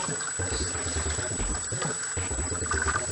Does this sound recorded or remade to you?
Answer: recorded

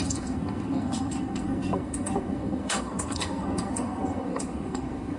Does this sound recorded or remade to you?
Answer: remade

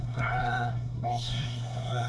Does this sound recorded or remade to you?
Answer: remade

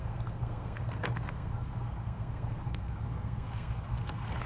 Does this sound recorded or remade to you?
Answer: remade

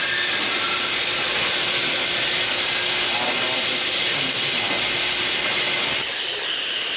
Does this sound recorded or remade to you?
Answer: recorded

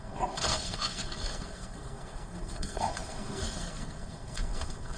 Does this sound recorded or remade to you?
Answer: remade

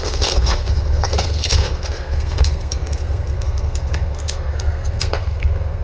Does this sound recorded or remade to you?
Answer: remade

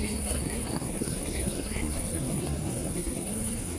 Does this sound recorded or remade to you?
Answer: remade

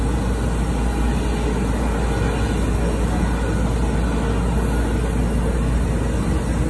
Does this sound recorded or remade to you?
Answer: recorded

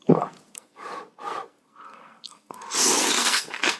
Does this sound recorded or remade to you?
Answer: remade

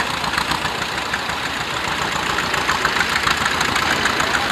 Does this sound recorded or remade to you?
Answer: recorded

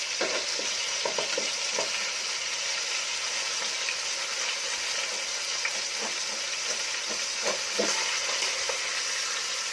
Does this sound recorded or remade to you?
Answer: recorded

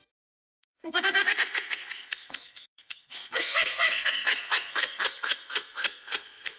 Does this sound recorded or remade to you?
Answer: remade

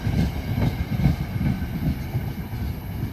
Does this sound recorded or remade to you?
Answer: recorded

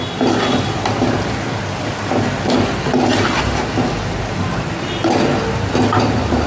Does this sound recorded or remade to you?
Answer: recorded